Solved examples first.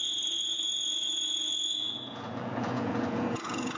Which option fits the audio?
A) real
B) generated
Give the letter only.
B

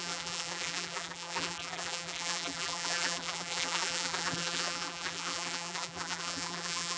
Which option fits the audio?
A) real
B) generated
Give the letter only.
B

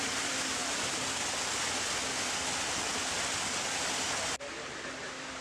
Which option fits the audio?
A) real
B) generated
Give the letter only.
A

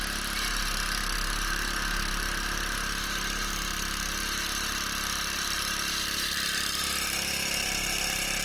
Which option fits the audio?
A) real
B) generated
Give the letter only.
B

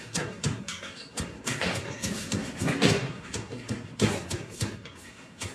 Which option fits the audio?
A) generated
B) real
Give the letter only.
A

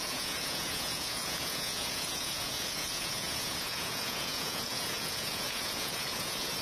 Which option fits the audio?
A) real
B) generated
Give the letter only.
B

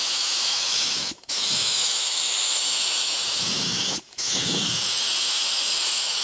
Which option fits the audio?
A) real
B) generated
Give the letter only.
B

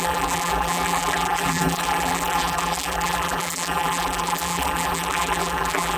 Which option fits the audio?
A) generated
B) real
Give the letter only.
A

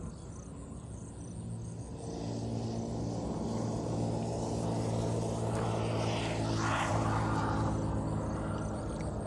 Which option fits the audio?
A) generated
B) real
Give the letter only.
B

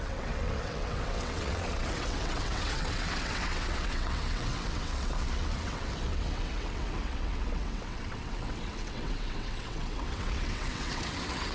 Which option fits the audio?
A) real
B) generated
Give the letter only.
B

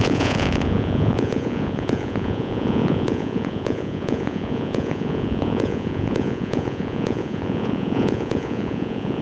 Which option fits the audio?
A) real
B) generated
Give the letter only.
B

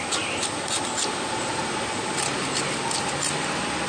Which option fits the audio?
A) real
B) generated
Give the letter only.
A